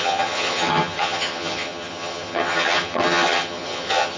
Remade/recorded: remade